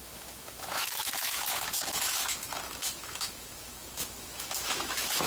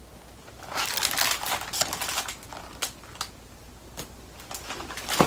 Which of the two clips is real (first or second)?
second